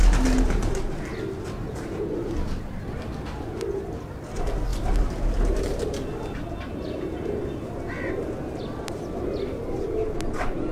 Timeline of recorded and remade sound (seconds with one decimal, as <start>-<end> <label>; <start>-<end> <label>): 0.0-10.7 recorded